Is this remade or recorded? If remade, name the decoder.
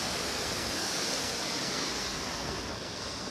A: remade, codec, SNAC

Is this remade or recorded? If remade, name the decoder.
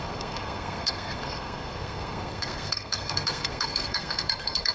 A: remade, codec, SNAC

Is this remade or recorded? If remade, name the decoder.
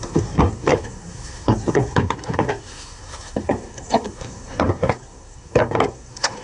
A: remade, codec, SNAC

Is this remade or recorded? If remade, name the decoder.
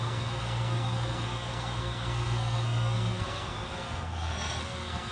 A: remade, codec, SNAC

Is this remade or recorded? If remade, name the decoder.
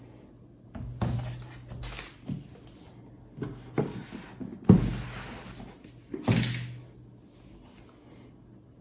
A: recorded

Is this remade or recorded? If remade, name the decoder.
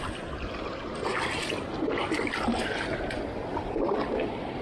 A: recorded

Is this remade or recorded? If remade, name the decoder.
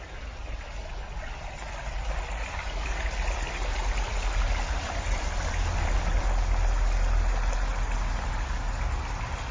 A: recorded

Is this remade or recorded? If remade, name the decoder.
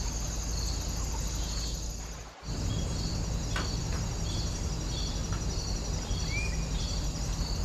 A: recorded